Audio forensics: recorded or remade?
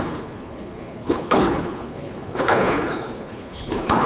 remade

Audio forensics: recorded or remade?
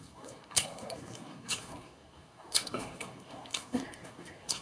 remade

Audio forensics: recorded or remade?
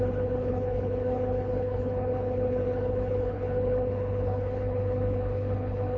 remade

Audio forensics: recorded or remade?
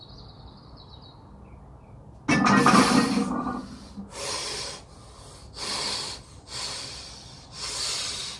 recorded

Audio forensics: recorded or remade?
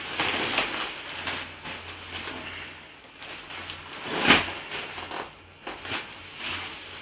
recorded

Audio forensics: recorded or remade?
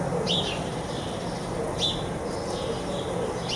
recorded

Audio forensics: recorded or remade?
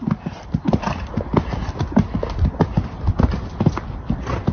recorded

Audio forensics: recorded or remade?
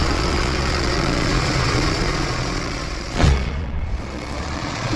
remade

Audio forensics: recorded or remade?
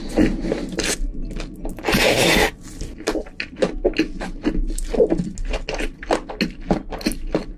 recorded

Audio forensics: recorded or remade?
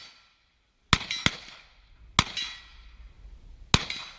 recorded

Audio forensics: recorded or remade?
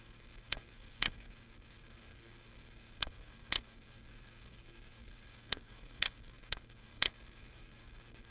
remade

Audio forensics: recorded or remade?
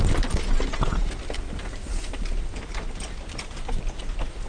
recorded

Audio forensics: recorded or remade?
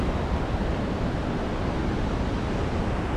recorded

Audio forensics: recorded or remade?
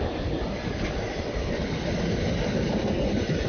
recorded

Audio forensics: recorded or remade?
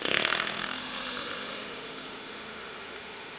remade